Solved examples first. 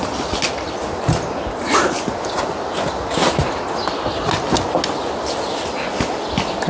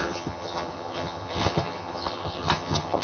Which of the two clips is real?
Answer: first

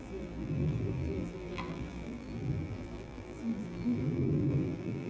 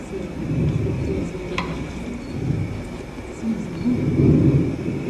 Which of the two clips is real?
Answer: second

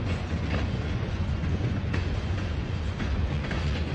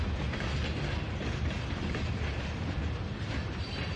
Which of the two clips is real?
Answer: second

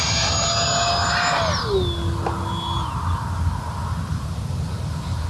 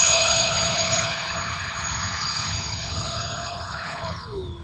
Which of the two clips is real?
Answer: first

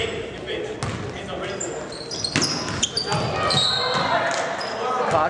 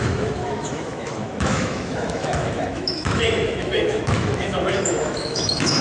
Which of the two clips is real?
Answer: first